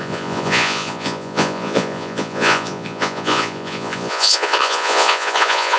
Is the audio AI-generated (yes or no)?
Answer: yes